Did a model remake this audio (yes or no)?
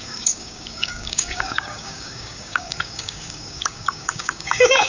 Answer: yes